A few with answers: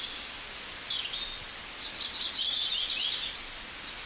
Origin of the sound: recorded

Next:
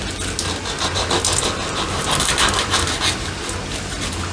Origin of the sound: recorded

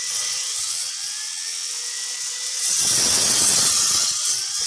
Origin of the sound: remade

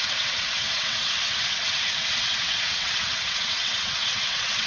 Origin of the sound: remade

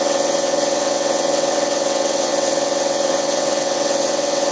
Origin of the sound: remade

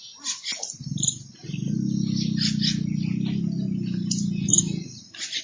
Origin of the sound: recorded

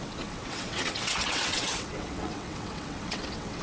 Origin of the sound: remade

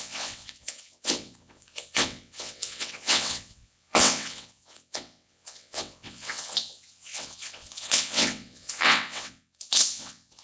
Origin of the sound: remade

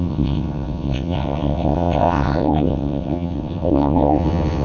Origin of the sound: remade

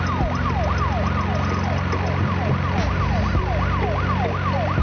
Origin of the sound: recorded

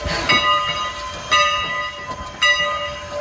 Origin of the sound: recorded